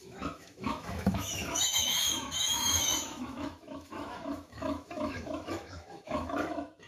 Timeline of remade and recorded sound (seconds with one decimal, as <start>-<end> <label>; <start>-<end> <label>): 0.0-6.9 remade